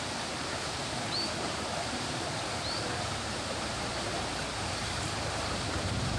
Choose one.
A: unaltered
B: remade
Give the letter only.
B